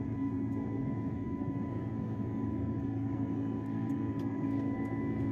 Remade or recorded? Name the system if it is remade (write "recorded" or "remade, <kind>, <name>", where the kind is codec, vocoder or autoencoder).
remade, codec, SNAC